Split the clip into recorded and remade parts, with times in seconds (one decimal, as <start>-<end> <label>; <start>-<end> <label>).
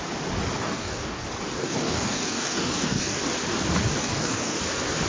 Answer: 0.0-0.6 recorded; 0.6-1.2 remade; 1.2-1.6 recorded; 1.6-3.2 remade; 3.2-4.0 recorded; 4.0-4.6 remade; 4.6-5.1 recorded